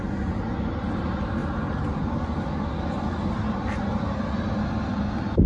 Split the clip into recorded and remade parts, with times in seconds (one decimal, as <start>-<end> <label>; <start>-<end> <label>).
0.0-5.5 recorded